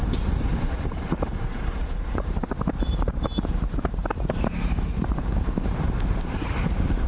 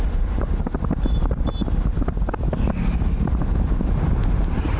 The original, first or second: second